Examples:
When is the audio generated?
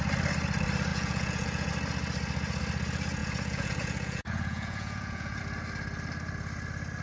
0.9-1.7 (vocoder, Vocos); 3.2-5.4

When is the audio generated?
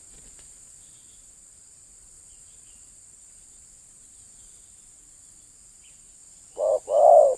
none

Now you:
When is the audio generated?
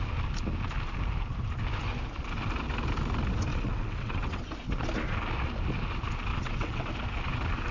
3.5-4.4 (vocoder, WaveNeXt); 6.3-6.9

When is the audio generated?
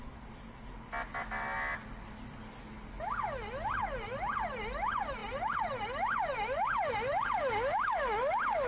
none